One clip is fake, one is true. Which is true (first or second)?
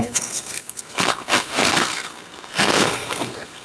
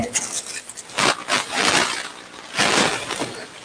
second